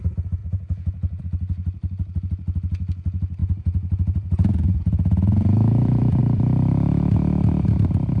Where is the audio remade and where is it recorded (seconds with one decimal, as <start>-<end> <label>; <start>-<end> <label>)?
0.0-0.4 recorded; 0.4-1.2 remade; 1.2-3.4 recorded; 3.4-6.2 remade; 6.2-8.2 recorded